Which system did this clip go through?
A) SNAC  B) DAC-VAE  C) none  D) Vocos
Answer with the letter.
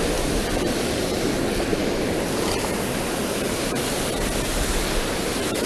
C